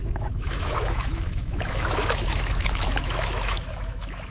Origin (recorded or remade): remade